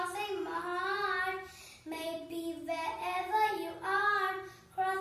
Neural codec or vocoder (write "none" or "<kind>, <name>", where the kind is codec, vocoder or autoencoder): none